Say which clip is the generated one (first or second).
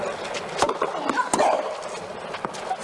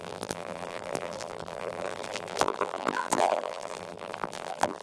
second